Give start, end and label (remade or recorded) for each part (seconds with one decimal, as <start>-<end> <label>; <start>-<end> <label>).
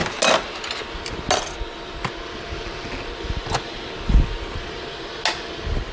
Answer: 0.0-5.9 recorded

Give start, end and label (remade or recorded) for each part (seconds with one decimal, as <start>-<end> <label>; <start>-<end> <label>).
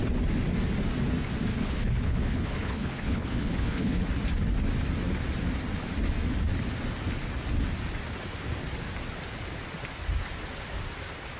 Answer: 0.0-1.5 recorded; 1.5-4.0 remade; 4.0-11.4 recorded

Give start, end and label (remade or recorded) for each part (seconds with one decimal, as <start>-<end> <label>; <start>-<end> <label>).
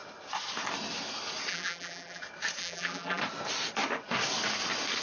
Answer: 0.0-1.5 recorded; 1.5-2.2 remade; 2.2-2.6 recorded; 2.6-3.2 remade; 3.2-5.0 recorded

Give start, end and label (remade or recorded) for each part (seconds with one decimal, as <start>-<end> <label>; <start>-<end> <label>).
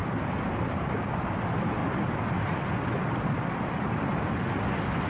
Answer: 0.0-1.0 remade; 1.0-5.1 recorded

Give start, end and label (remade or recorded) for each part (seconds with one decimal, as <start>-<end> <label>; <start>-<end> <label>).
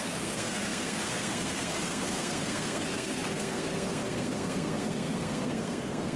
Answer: 0.0-6.2 remade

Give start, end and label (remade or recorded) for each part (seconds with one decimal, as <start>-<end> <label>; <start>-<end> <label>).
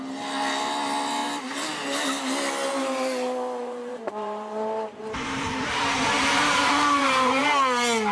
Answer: 0.0-3.6 recorded; 3.6-7.0 remade; 7.0-8.1 recorded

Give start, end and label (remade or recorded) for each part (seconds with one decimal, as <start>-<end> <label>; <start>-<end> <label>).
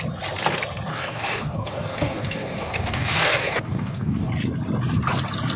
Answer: 0.0-0.9 recorded; 0.9-4.3 remade; 4.3-5.6 recorded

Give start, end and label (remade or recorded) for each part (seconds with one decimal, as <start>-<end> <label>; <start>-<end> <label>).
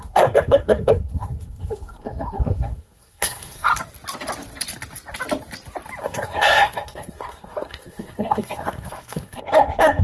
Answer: 0.0-3.7 remade; 3.7-6.0 recorded; 6.0-10.0 remade